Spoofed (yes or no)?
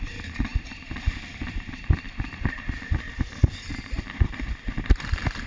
no